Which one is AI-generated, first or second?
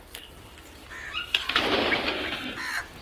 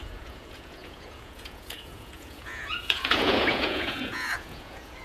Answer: second